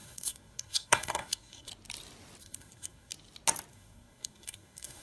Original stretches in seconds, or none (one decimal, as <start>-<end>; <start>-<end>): 1.7-2.4; 3.1-3.7